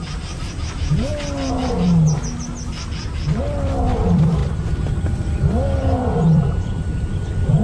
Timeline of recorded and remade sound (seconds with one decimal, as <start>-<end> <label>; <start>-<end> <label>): 0.0-1.1 remade; 1.1-3.4 recorded; 3.4-4.4 remade; 4.4-5.0 recorded; 5.0-7.6 remade